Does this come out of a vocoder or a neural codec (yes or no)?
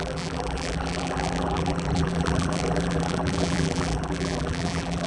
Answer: yes